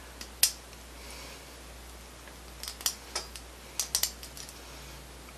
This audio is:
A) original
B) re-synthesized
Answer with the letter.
A